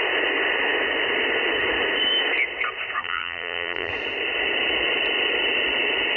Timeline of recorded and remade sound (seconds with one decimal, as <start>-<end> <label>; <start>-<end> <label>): 0.0-3.0 recorded; 3.0-3.9 remade; 3.9-6.2 recorded